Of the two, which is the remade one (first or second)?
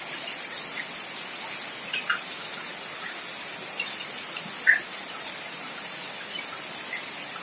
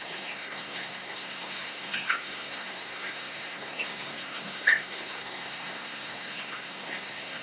second